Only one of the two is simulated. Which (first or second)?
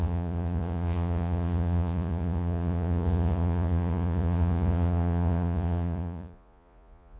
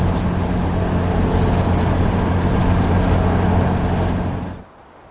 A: first